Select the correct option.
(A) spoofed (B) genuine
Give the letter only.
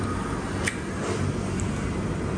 B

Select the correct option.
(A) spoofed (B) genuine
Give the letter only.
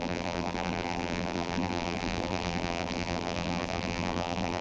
A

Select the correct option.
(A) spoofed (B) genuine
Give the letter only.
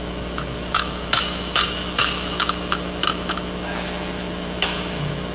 A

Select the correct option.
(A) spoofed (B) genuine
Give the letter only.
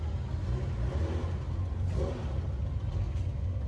B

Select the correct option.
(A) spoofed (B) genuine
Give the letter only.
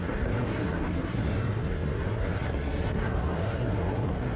A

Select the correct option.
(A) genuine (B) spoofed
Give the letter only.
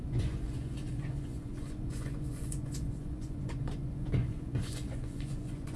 B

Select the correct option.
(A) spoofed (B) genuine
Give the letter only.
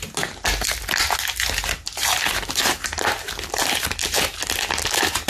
B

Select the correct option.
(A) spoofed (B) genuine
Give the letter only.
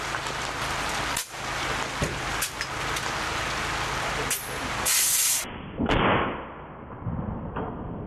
B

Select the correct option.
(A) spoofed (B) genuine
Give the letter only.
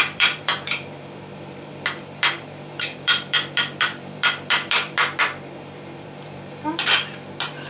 A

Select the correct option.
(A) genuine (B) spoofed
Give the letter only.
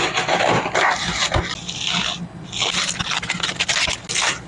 A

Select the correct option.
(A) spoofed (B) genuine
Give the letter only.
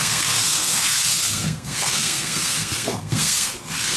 A